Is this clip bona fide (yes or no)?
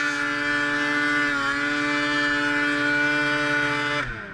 yes